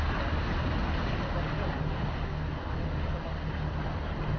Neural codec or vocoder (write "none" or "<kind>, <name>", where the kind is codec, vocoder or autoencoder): none